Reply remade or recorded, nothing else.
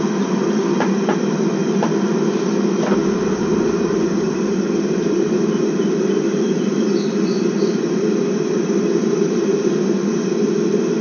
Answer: recorded